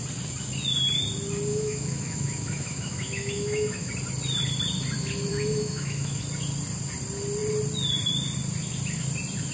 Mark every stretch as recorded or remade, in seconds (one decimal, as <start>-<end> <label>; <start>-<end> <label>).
0.0-1.5 recorded; 1.5-3.9 remade; 3.9-5.3 recorded; 5.3-6.2 remade; 6.2-9.5 recorded